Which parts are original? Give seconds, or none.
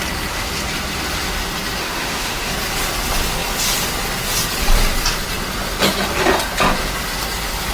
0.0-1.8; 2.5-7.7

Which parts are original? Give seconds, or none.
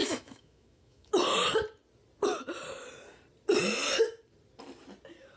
1.1-5.4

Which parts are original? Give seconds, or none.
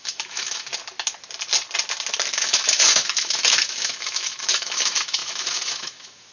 0.7-2.3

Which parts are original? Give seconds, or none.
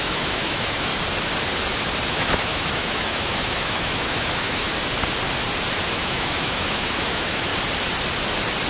0.9-2.1; 4.7-5.9; 7.5-8.7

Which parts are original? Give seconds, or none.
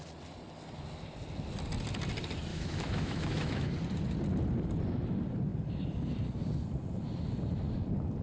0.0-2.5; 3.7-8.2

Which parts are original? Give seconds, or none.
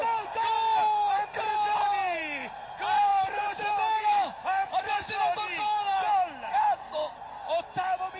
0.0-3.1; 5.2-8.2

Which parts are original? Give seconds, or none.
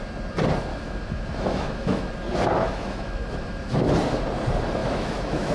0.0-0.7; 2.1-2.6; 3.9-4.8